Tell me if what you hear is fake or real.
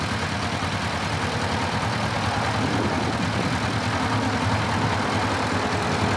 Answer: real